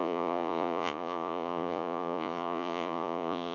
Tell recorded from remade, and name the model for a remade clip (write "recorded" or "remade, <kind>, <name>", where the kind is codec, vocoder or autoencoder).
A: remade, vocoder, Vocos